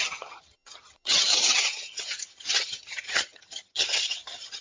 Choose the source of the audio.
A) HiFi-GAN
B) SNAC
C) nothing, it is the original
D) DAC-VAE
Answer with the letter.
A